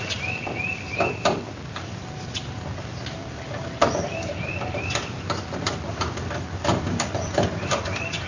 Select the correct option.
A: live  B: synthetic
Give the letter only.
B